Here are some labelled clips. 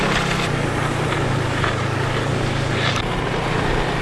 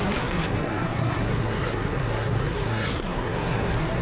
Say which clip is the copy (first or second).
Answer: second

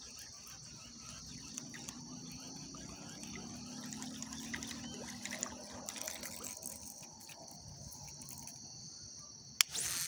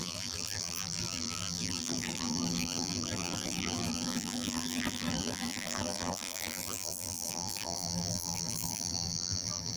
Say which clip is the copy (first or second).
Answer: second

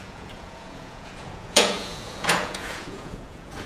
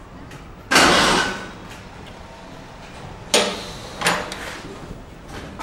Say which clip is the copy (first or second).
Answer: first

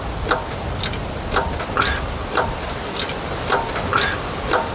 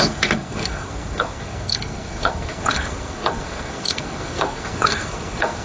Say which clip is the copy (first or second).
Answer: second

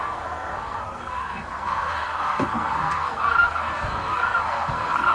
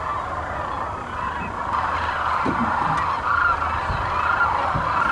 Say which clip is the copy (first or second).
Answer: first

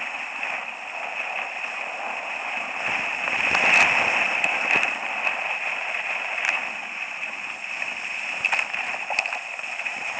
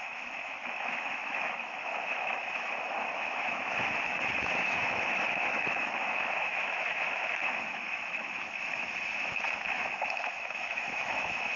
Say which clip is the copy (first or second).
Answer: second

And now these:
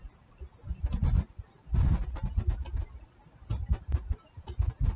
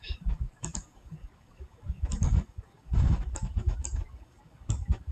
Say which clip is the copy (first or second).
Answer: second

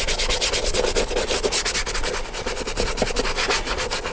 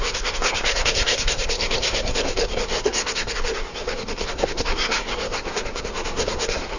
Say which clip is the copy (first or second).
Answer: second